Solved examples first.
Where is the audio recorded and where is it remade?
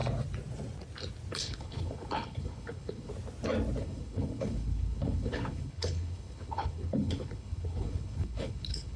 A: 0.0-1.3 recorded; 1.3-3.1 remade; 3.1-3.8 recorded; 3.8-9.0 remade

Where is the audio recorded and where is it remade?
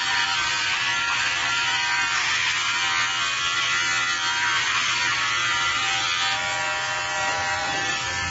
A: 0.0-2.1 remade; 2.1-4.7 recorded; 4.7-5.8 remade; 5.8-7.2 recorded; 7.2-8.3 remade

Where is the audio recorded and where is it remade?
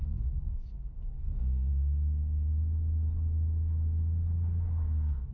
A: 0.0-1.7 remade; 1.7-5.3 recorded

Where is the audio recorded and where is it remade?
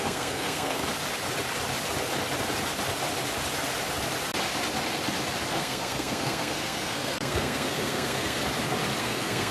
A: 0.0-0.8 remade; 0.8-5.5 recorded; 5.5-8.4 remade; 8.4-9.0 recorded; 9.0-9.5 remade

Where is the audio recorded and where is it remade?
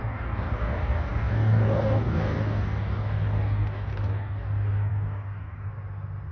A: 0.0-5.7 remade; 5.7-6.3 recorded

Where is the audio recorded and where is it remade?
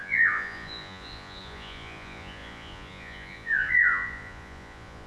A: 0.0-5.1 remade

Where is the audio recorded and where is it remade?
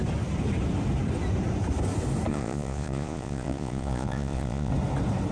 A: 0.0-2.3 recorded; 2.3-4.7 remade; 4.7-5.3 recorded